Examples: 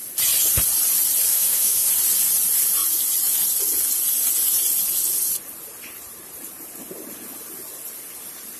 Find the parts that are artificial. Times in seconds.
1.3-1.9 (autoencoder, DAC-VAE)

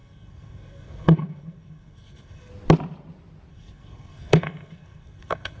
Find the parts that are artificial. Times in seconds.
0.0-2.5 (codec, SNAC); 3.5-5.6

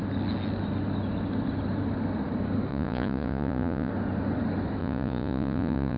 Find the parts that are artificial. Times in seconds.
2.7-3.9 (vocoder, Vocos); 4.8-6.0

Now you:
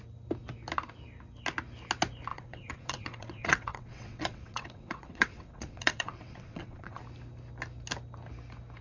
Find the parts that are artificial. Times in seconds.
2.3-7.0 (vocoder, WaveNeXt)

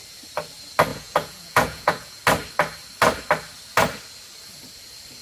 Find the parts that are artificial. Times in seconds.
0.9-2.2 (vocoder, Vocos)

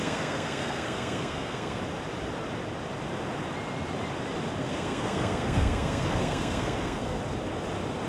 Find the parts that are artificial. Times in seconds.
0.0-1.8 (codec, SNAC); 4.6-7.2

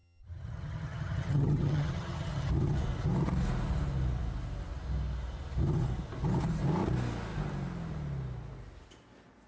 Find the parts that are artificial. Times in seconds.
0.0-2.5 (vocoder, HiFi-GAN)

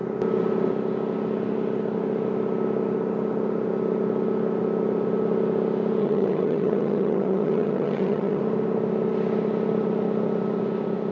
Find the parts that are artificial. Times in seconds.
6.0-8.4 (vocoder, HiFi-GAN)